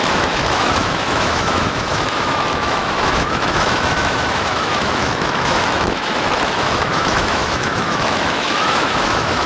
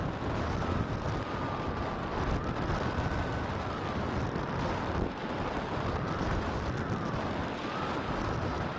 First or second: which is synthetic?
first